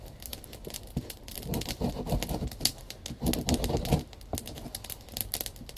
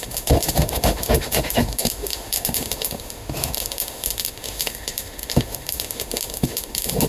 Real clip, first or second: first